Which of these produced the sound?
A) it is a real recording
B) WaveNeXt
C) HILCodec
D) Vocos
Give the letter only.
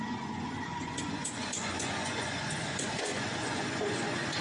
D